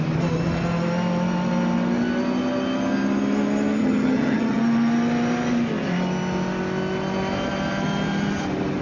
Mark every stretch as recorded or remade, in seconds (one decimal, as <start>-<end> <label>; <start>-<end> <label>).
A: 0.0-3.8 recorded; 3.8-4.6 remade; 4.6-8.8 recorded